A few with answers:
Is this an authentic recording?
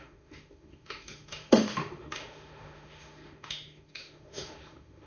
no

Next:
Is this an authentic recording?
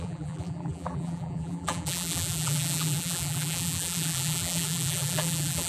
no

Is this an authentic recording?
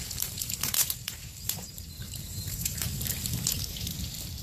no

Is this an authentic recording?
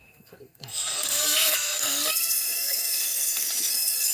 no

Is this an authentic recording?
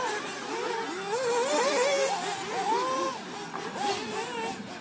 yes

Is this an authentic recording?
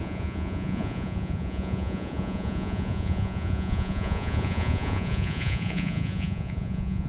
no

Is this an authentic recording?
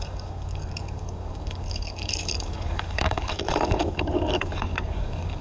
no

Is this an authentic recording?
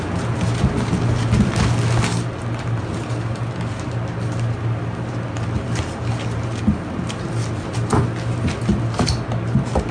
yes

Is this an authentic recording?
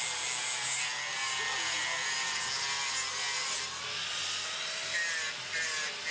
yes